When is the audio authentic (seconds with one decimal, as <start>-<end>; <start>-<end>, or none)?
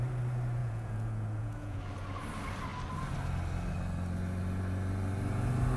0.0-0.6; 1.8-5.8